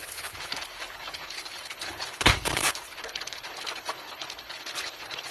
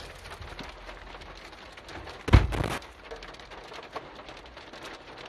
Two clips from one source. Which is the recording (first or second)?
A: second